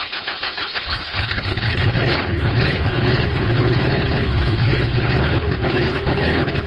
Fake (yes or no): yes